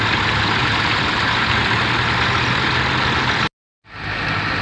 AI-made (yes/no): no